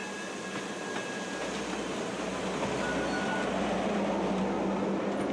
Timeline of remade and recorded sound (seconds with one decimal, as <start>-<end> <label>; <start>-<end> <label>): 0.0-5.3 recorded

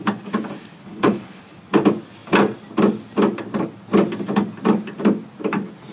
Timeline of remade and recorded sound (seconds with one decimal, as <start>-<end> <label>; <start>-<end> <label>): 0.0-0.8 recorded; 0.8-1.4 remade; 1.4-5.9 recorded

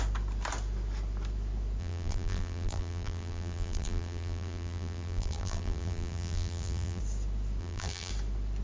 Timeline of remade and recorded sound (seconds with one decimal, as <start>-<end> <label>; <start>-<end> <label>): 0.0-1.8 recorded; 1.8-7.0 remade; 7.0-7.6 recorded; 7.6-8.1 remade; 8.1-8.6 recorded